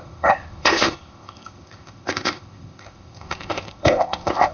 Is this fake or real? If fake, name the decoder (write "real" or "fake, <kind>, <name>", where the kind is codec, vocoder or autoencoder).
fake, codec, ZipCodec